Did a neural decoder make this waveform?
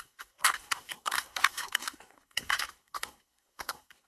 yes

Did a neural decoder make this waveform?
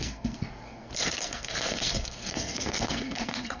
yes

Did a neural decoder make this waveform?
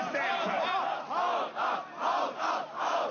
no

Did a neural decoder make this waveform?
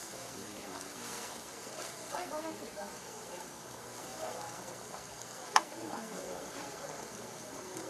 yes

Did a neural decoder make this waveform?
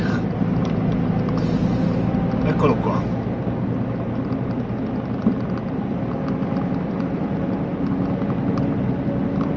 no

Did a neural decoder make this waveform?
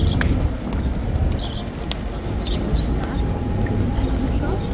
no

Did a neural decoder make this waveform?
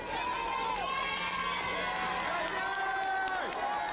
no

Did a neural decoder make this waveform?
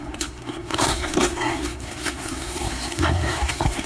yes